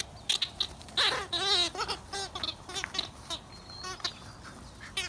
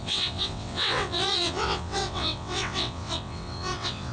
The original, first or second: first